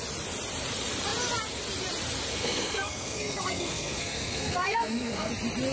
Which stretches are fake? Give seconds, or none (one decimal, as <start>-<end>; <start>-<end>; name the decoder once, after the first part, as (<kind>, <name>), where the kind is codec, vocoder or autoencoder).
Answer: 2.3-5.3 (codec, SNAC)

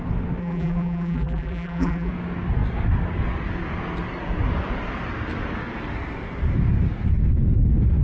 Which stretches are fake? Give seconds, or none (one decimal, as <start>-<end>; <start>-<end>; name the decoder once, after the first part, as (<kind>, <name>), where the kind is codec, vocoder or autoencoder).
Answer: 0.4-2.1 (vocoder, BigVGAN v2)

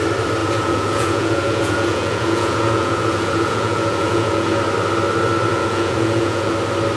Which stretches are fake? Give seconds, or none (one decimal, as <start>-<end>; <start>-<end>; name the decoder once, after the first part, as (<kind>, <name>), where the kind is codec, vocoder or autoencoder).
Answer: 0.4-4.6 (vocoder, Vocos); 5.5-6.5

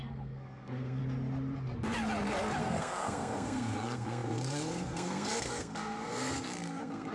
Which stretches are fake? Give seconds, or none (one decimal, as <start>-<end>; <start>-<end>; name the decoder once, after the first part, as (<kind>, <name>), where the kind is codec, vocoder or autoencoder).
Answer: 0.0-1.0 (codec, SNAC); 2.6-7.1

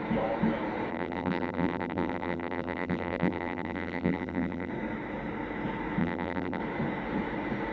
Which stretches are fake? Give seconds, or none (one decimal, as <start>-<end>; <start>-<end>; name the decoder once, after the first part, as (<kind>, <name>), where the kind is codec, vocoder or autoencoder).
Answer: 0.9-4.7 (vocoder, BigVGAN v2); 6.0-6.6

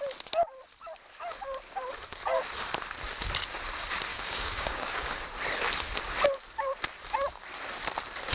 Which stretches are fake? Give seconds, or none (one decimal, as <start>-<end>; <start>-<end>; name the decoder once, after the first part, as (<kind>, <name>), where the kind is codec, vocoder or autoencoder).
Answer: 4.1-5.2 (codec, DAC)

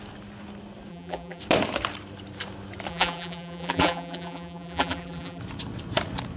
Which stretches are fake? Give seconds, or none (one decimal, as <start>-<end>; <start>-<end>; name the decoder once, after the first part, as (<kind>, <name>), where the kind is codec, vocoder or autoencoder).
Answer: 0.9-1.4 (vocoder, BigVGAN v2); 2.9-5.4

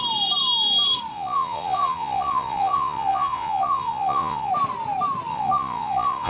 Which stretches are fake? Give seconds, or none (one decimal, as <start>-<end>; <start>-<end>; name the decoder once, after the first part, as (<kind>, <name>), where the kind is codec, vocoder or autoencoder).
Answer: 1.1-4.5 (vocoder, Vocos); 5.3-6.3